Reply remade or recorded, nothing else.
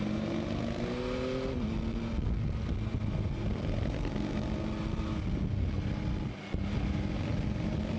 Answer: recorded